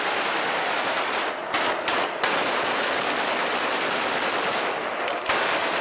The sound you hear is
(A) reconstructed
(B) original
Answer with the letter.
A